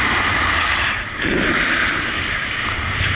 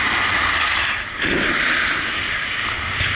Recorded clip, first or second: second